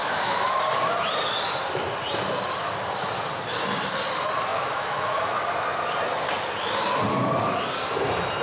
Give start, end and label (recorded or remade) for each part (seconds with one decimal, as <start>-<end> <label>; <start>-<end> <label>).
0.0-0.6 remade; 0.6-4.5 recorded; 4.5-5.2 remade; 5.2-8.4 recorded